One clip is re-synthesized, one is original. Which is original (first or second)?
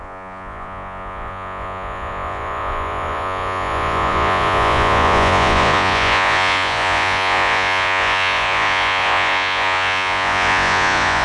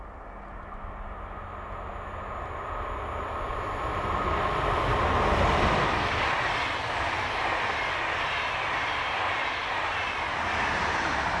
second